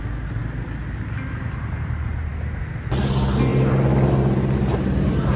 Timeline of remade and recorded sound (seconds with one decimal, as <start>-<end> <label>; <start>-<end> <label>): 0.0-5.4 recorded